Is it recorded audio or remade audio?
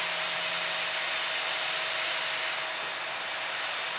recorded